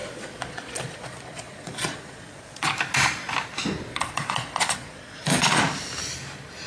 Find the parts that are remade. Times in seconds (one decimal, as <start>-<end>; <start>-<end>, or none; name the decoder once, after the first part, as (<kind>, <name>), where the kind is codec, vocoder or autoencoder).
0.0-2.7 (vocoder, Vocos); 3.9-5.6